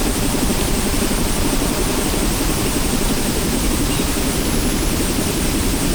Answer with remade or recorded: recorded